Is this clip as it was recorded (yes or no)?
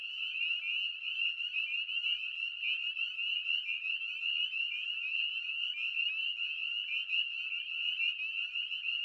yes